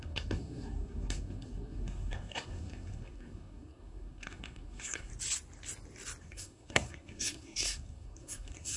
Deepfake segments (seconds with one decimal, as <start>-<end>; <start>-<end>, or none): 0.0-5.1; 6.2-8.8